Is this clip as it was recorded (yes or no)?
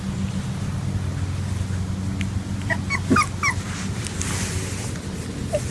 yes